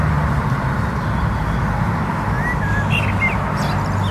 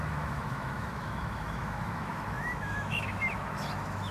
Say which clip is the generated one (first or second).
second